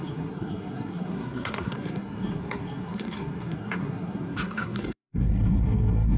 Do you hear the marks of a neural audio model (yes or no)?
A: yes